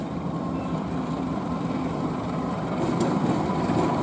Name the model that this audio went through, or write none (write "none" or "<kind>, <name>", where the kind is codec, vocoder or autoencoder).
none